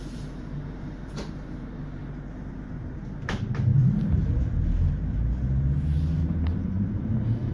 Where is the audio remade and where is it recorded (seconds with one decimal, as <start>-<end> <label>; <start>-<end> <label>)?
0.0-2.0 remade; 2.0-2.5 recorded; 2.5-3.7 remade; 3.7-6.2 recorded; 6.2-7.5 remade